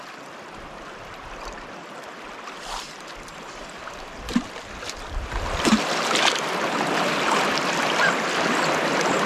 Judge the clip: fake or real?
real